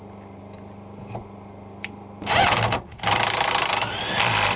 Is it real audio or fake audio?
real